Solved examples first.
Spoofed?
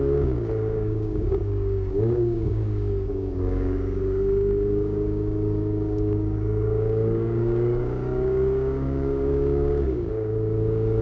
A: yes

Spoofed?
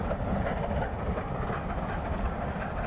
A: no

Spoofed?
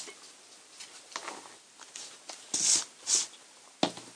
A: no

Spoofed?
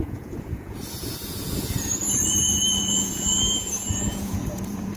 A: yes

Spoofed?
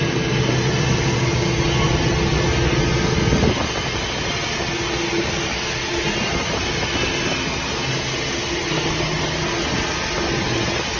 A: no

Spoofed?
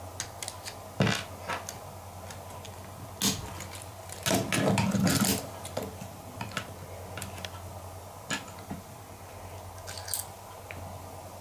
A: no